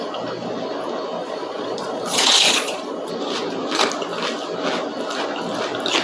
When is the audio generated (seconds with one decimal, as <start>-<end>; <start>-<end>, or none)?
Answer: 1.2-3.1